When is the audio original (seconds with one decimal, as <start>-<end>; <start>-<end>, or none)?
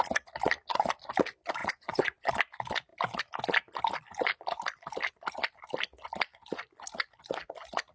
0.0-1.6; 2.3-7.9